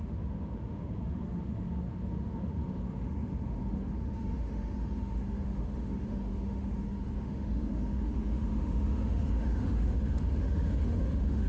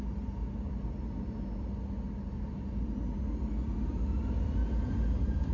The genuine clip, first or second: second